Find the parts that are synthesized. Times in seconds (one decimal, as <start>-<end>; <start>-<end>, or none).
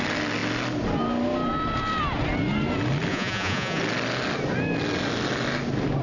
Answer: 3.1-3.8